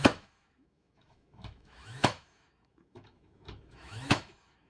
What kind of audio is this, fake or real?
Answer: fake